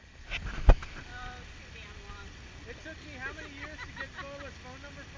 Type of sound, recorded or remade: recorded